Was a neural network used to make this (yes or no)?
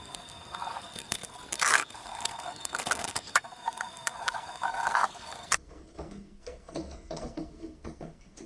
yes